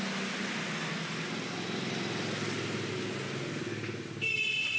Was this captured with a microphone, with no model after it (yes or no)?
yes